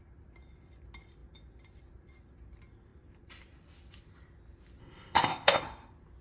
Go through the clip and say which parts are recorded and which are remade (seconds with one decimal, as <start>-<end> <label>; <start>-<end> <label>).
0.0-4.8 recorded; 4.8-5.6 remade; 5.6-6.2 recorded